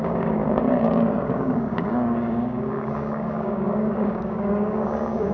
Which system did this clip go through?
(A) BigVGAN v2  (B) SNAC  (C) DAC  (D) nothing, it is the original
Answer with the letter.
C